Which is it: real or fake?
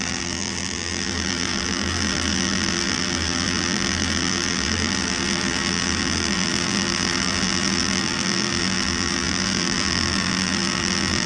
fake